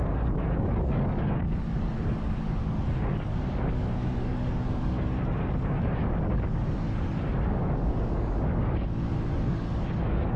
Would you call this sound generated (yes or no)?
yes